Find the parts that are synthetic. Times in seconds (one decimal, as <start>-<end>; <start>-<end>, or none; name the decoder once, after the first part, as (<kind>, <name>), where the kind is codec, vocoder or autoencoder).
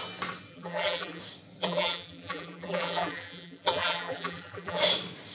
0.5-1.2 (vocoder, BigVGAN v2); 1.6-4.8